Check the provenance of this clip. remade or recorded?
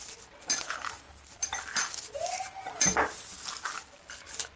recorded